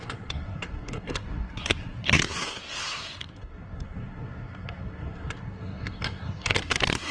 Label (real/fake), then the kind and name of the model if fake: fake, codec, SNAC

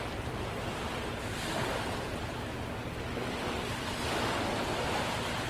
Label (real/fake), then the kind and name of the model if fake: real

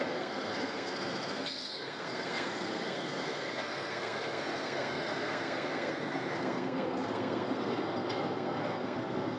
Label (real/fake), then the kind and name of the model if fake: fake, codec, SNAC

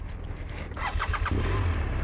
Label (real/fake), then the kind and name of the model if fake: real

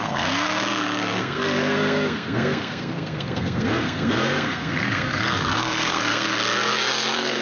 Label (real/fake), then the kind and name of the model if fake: fake, codec, SNAC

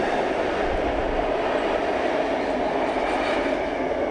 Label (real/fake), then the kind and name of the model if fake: real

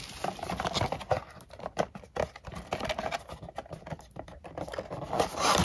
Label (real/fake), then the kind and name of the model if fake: real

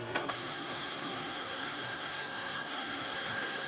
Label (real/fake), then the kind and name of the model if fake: fake, codec, SNAC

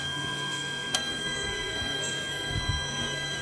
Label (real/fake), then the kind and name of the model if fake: fake, codec, SNAC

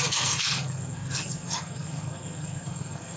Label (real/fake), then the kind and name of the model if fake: fake, codec, SNAC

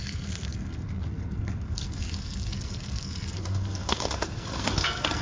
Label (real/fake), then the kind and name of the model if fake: fake, codec, SNAC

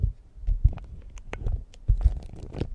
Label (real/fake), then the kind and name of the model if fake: real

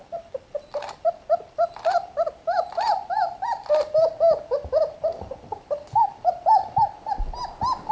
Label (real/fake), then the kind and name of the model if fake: real